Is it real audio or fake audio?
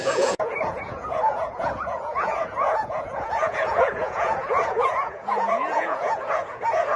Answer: fake